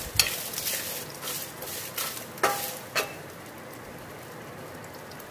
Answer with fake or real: real